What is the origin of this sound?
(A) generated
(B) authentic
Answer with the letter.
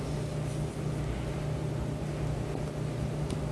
B